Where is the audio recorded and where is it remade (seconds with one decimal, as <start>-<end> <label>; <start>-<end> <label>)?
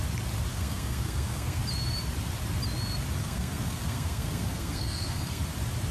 0.0-0.5 recorded; 0.5-1.6 remade; 1.6-3.2 recorded; 3.2-5.4 remade; 5.4-5.9 recorded